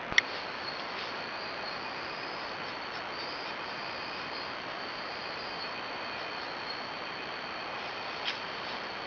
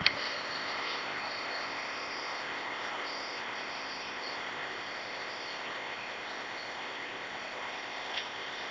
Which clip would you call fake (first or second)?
second